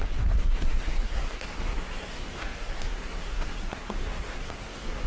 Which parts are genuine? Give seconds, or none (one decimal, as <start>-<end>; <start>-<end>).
none